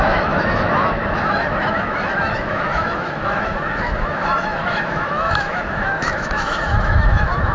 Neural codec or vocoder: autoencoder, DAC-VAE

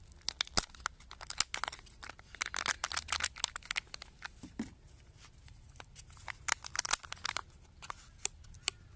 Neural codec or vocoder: none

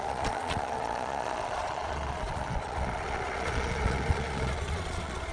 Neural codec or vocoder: vocoder, Vocos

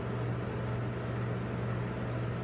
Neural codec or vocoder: none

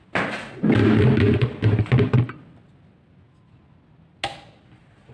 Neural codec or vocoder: none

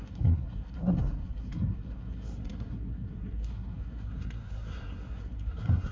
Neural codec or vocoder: codec, SNAC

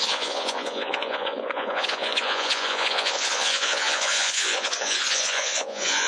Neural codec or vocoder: vocoder, Vocos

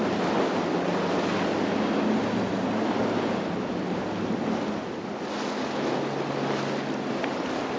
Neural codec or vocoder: none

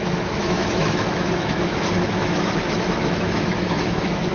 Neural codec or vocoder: autoencoder, DAC-VAE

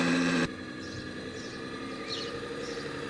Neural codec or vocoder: vocoder, BigVGAN v2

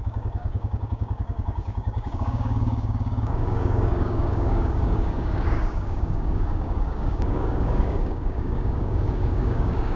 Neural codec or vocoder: codec, DAC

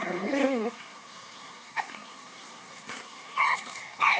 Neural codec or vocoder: codec, SNAC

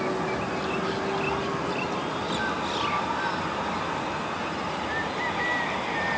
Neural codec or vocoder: none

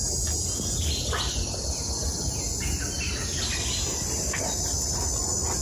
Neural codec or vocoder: none